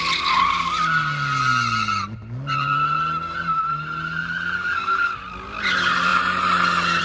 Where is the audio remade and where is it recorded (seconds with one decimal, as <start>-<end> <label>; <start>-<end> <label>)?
0.0-7.0 recorded